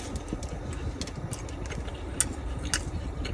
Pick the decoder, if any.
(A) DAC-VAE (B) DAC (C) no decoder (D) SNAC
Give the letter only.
C